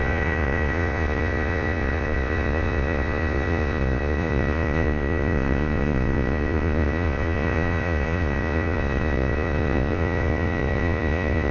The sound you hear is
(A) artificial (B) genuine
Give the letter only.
A